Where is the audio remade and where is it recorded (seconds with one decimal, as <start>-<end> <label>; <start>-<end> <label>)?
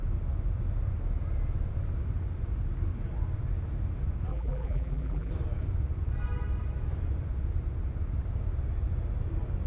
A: 0.0-4.3 recorded; 4.3-5.3 remade; 5.3-9.7 recorded